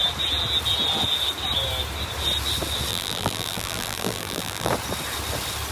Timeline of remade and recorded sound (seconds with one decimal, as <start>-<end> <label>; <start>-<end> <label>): 0.0-2.9 recorded; 2.9-4.7 remade; 4.7-5.7 recorded